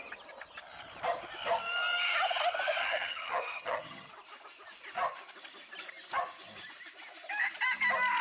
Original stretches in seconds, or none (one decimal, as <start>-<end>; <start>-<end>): 0.0-2.8; 4.1-8.2